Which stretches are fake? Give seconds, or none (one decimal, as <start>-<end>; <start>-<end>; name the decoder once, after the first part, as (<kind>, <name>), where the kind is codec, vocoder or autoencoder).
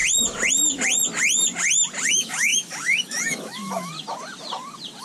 2.1-3.9 (autoencoder, DAC-VAE)